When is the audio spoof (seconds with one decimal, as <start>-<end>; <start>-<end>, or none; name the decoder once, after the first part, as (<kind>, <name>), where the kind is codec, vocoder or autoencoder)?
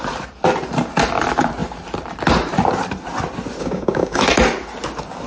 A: 3.6-4.2 (codec, DAC)